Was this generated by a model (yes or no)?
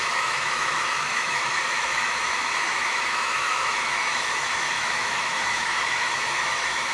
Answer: yes